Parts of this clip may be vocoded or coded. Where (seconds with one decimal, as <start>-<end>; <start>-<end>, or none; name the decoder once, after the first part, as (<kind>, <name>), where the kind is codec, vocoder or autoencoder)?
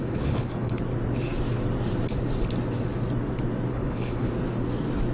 0.0-0.8 (codec, HILCodec); 3.7-4.3